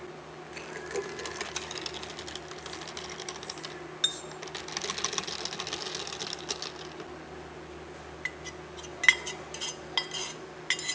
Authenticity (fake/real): real